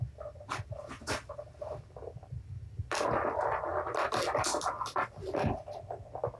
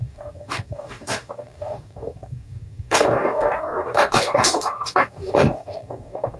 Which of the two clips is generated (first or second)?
second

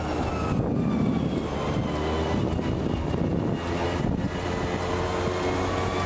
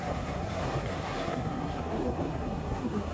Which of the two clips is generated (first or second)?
second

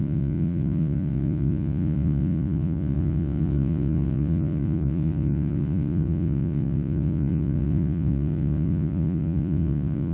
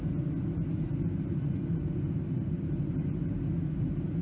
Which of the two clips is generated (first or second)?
first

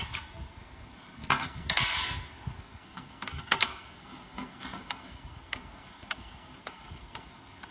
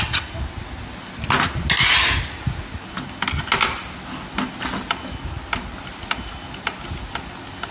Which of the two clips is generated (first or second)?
first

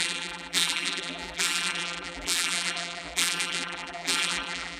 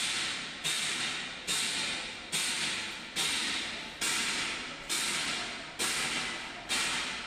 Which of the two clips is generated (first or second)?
first